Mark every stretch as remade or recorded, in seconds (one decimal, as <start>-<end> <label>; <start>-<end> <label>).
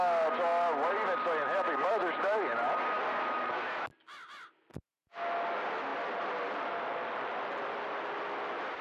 0.0-8.8 recorded